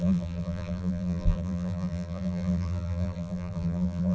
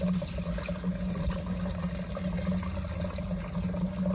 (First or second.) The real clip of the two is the second